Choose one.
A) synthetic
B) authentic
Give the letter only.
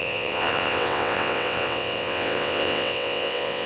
A